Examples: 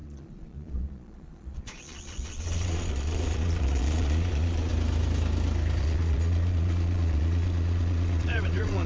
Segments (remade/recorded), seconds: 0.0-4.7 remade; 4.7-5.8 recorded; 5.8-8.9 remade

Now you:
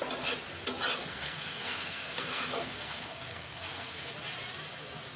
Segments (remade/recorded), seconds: 0.0-1.0 recorded; 1.0-4.1 remade; 4.1-5.2 recorded

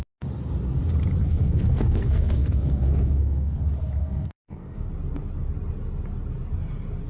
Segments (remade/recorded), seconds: 0.0-1.2 recorded; 1.2-3.6 remade; 3.6-4.0 recorded; 4.0-4.9 remade; 4.9-7.1 recorded

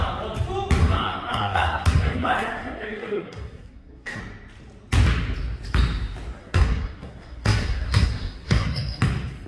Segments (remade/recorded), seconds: 0.0-0.8 recorded; 0.8-4.2 remade; 4.2-6.4 recorded; 6.4-9.0 remade; 9.0-9.5 recorded

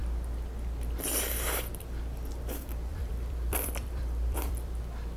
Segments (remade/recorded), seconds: 0.0-2.9 recorded; 2.9-4.8 remade; 4.8-5.2 recorded

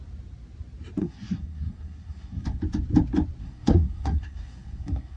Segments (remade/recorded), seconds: 0.0-1.0 recorded; 1.0-2.6 remade; 2.6-3.4 recorded; 3.4-5.2 remade

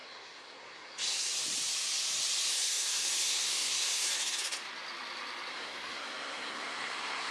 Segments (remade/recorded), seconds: 0.0-1.3 remade; 1.3-2.5 recorded; 2.5-4.6 remade; 4.6-5.5 recorded; 5.5-7.3 remade